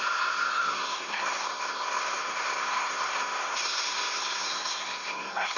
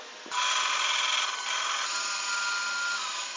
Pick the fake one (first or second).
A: first